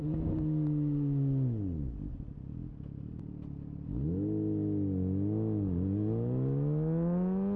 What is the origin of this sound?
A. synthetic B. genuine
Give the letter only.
B